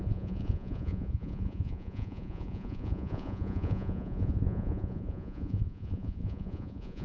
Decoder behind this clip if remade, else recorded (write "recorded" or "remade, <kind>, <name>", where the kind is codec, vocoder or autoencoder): remade, vocoder, Vocos